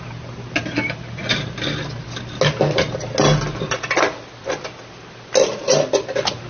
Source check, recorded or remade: recorded